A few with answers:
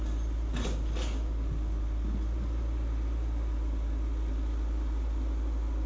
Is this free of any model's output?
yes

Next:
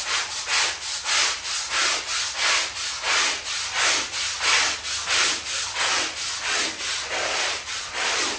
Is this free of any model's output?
yes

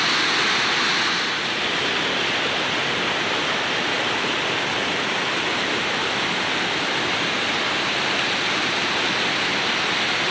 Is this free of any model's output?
yes